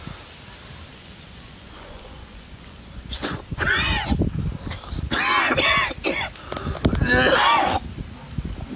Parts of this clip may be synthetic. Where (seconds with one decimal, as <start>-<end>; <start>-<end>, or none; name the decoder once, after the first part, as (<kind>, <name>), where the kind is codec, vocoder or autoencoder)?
0.9-4.2 (vocoder, Vocos)